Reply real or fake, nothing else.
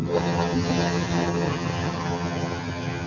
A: fake